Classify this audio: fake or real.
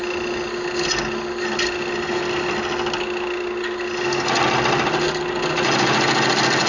real